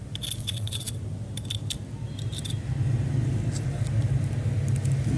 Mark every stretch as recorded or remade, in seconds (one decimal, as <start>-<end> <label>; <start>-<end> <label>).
0.0-0.4 recorded; 0.4-0.9 remade; 0.9-5.2 recorded